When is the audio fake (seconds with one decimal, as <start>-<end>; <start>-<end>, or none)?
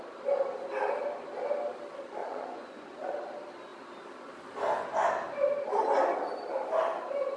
2.2-3.1